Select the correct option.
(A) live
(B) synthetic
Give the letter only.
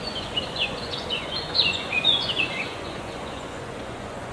B